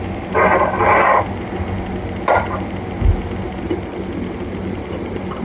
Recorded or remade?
recorded